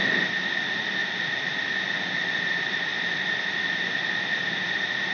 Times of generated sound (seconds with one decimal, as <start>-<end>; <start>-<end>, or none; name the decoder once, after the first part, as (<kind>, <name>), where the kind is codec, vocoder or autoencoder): 0.5-1.0 (vocoder, BigVGAN v2); 1.7-2.9; 3.6-5.1